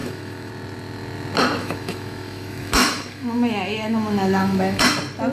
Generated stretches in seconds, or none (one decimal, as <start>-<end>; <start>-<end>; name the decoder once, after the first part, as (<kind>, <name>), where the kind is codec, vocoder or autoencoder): 0.0-0.5 (autoencoder, DAC-VAE); 1.6-4.8